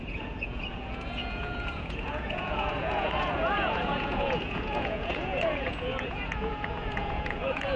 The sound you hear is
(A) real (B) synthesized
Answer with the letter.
B